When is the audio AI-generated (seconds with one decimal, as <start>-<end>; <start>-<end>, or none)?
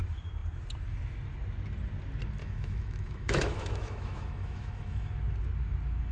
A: 2.4-5.1